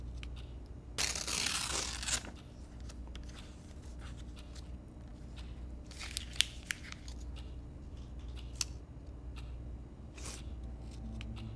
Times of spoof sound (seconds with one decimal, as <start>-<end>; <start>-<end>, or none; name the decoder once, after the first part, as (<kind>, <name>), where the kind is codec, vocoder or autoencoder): none